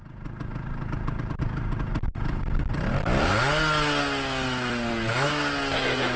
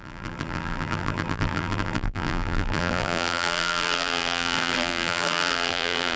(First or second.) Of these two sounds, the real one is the first